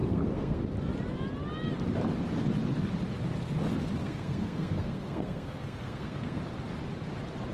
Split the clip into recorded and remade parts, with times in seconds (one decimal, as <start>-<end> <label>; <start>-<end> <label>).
0.0-0.6 remade; 0.6-4.0 recorded; 4.0-6.4 remade; 6.4-7.5 recorded